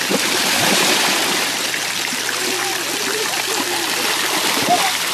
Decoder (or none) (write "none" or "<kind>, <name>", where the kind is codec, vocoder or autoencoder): none